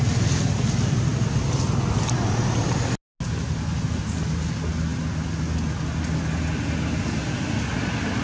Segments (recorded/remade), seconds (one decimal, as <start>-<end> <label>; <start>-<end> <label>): 0.0-8.2 recorded